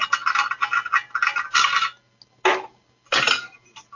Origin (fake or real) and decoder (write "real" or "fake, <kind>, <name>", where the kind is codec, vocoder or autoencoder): real